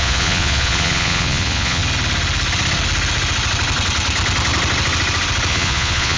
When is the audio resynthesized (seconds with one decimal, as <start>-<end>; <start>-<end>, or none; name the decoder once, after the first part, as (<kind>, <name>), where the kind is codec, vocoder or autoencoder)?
0.0-1.8 (vocoder, Vocos); 5.5-6.2